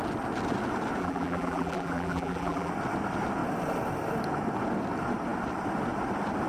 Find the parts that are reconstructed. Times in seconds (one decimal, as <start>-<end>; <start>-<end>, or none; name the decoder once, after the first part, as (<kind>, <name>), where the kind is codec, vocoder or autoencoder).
1.0-2.7 (vocoder, BigVGAN v2)